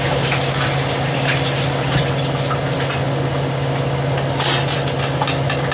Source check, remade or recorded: recorded